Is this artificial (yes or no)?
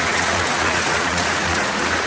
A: yes